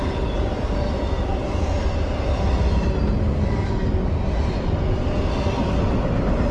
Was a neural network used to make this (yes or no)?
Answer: no